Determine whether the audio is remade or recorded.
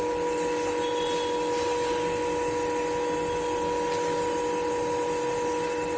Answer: recorded